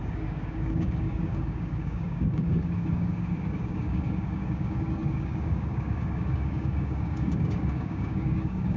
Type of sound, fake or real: fake